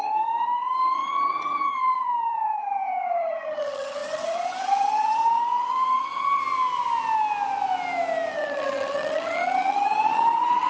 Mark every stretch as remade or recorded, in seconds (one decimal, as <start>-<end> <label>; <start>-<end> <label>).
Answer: 0.0-6.4 remade; 6.4-8.3 recorded; 8.3-10.7 remade